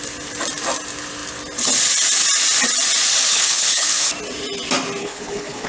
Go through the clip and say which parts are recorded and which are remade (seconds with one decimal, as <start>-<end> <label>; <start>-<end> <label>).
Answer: 0.0-3.3 recorded; 3.3-4.1 remade; 4.1-5.0 recorded; 5.0-5.7 remade